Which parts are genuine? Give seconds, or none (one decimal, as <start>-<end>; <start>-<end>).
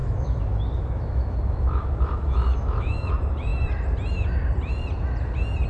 3.1-5.7